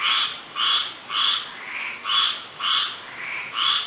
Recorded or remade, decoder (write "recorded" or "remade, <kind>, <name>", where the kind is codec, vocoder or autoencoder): remade, vocoder, BigVGAN v2